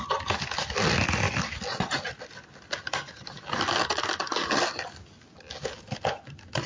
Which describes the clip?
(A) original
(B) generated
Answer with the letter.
A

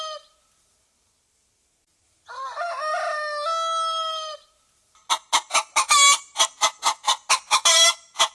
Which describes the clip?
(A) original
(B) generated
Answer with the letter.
A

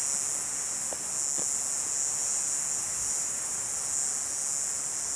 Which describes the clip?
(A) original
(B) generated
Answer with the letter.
A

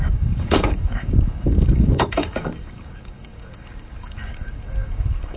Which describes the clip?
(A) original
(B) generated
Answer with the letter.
B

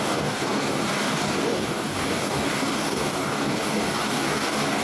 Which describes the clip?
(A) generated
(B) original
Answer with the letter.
A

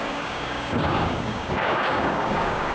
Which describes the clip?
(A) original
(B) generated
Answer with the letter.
B